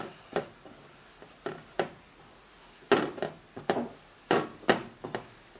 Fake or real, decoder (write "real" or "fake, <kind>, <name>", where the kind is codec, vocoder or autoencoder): real